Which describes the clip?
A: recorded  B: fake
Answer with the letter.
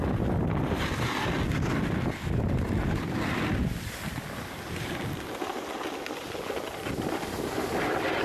A